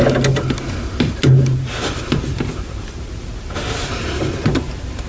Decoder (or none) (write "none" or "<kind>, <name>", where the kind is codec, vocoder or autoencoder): none